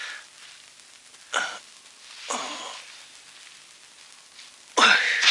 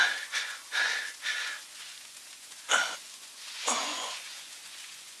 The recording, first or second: first